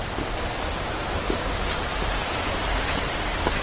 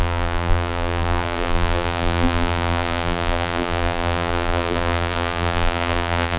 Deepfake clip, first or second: second